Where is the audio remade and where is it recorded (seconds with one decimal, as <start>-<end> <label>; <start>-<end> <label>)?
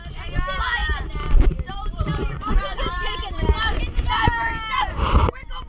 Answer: 0.0-0.8 recorded; 0.8-4.2 remade; 4.2-5.7 recorded